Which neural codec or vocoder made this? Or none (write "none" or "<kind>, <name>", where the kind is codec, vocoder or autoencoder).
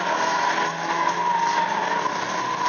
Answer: none